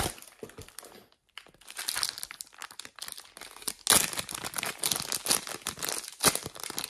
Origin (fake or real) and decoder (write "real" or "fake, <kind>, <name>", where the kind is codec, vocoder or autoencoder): real